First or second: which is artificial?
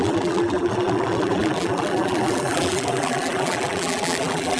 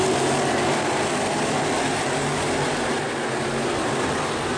first